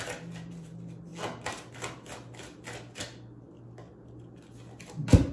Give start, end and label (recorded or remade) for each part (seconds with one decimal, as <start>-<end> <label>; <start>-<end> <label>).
0.0-5.3 recorded